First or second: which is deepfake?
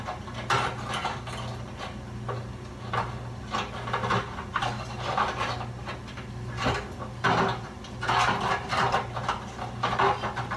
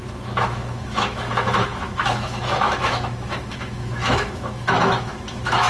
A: second